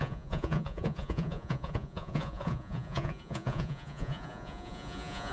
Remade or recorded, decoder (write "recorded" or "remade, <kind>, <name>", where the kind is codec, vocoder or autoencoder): remade, vocoder, Vocos